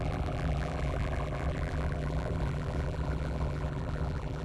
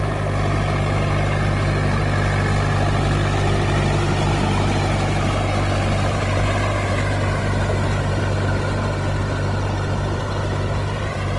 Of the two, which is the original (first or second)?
second